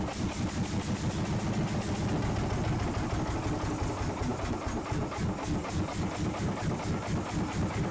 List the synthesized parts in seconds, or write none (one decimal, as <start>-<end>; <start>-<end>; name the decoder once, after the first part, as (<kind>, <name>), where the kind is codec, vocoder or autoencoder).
none